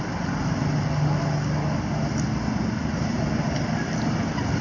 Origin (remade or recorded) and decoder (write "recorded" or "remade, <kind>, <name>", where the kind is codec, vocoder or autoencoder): recorded